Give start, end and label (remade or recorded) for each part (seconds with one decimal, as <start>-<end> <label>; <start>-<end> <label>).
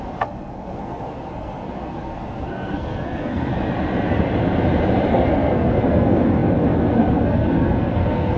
0.0-3.5 remade; 3.5-5.1 recorded; 5.1-8.4 remade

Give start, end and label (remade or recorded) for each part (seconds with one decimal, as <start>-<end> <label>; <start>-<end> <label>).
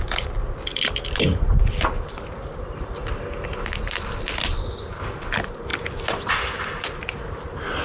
0.0-7.8 recorded